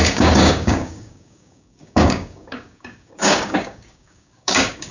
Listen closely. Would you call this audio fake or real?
fake